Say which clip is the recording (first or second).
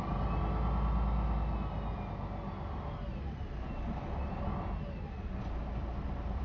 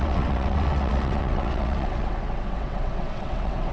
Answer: first